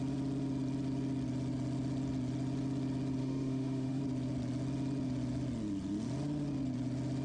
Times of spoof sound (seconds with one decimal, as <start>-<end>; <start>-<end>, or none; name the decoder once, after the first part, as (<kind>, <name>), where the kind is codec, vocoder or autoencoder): 3.2-4.0 (autoencoder, DAC-VAE)